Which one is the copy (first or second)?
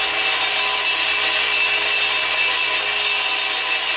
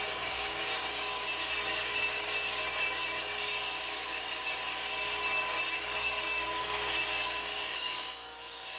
second